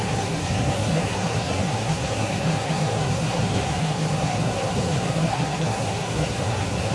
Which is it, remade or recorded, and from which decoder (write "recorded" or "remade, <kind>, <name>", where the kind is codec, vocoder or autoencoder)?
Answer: remade, codec, SNAC